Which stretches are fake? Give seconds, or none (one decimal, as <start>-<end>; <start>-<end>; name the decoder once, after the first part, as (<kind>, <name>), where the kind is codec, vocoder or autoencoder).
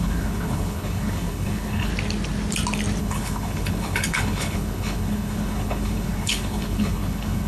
0.0-1.9 (codec, HILCodec); 3.0-7.5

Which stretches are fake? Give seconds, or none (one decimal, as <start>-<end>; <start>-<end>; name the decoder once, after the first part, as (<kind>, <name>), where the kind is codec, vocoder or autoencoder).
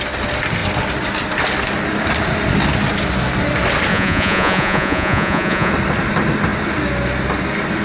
3.9-5.7 (vocoder, Vocos)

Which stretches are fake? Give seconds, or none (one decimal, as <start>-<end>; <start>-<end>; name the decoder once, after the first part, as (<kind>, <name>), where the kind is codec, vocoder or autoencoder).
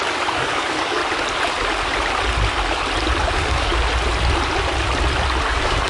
0.0-1.0 (codec, DAC); 3.3-3.7; 5.5-5.9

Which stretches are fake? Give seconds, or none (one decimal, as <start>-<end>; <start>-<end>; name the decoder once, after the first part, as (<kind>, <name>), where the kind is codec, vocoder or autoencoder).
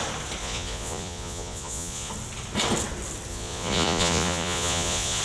0.4-2.1 (vocoder, Vocos); 3.3-5.2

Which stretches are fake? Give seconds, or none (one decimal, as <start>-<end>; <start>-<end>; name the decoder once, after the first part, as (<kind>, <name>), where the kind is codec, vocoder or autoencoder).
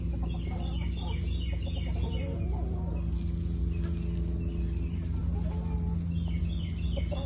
none